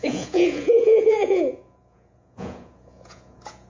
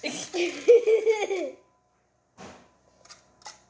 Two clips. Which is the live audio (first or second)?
second